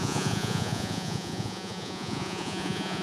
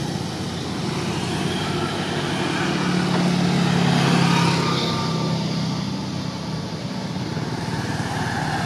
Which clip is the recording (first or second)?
second